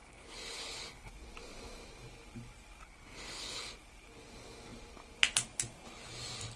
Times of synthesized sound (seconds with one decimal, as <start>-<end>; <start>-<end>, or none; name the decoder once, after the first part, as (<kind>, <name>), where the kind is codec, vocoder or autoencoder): 0.0-1.1 (codec, HILCodec); 2.8-3.7